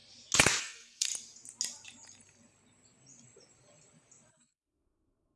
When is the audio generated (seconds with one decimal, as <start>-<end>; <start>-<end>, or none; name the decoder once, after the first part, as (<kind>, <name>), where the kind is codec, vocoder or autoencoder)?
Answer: 0.6-1.1 (codec, SNAC); 4.3-5.4